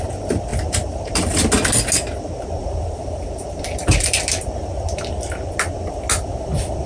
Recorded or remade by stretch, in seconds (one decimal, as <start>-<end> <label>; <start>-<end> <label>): 0.0-0.5 recorded; 0.5-1.3 remade; 1.3-2.6 recorded; 2.6-4.2 remade; 4.2-6.9 recorded